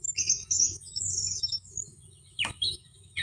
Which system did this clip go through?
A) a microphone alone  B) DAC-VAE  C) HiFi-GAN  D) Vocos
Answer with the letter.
B